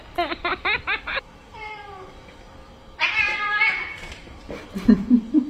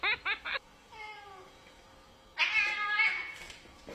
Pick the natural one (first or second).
second